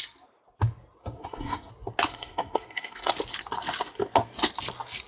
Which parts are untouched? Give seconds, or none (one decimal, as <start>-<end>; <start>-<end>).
0.0-1.0; 1.7-2.1; 3.1-5.1